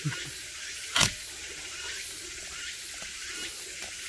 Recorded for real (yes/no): yes